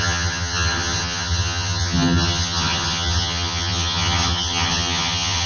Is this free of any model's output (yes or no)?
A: no